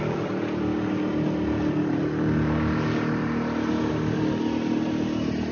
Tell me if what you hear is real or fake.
real